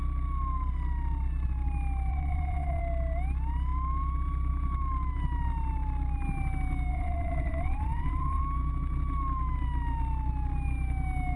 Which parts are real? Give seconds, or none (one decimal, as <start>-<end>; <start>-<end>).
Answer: 0.0-2.1; 2.8-6.9; 8.4-11.4